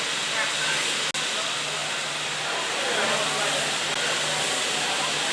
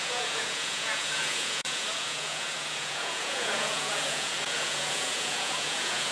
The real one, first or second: first